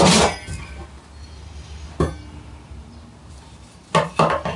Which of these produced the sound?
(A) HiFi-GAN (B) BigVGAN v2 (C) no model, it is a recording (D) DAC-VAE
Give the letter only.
C